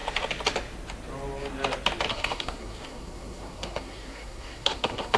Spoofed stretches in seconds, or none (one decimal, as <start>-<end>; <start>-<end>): 2.1-5.2